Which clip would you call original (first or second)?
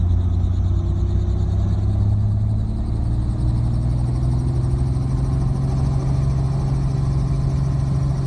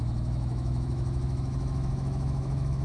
first